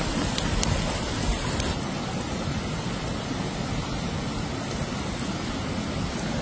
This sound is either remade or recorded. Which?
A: recorded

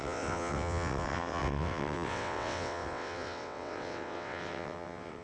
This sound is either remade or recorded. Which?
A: remade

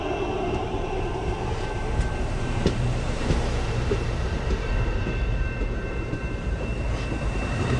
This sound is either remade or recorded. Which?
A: remade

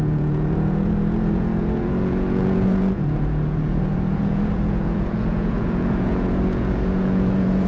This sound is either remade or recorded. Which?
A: remade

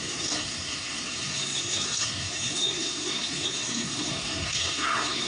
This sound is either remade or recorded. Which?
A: remade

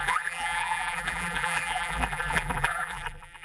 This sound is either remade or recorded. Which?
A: remade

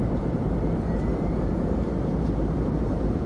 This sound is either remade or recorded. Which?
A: remade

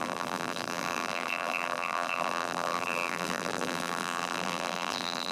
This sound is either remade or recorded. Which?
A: remade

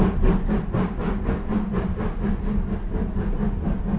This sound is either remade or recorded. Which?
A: recorded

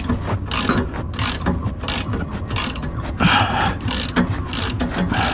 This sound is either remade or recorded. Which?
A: recorded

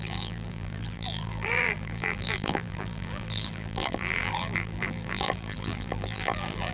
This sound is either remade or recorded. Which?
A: remade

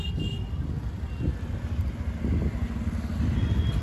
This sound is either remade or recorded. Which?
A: recorded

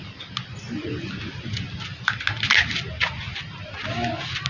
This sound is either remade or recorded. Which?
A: recorded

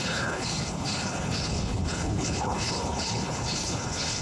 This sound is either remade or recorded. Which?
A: remade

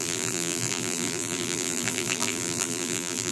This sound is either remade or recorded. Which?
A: remade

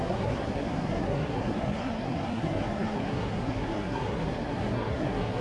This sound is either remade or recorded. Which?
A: remade